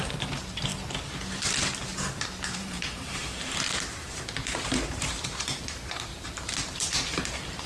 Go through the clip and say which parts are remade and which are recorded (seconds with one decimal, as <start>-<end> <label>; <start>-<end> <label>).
0.0-0.7 remade; 0.7-2.3 recorded; 2.3-7.7 remade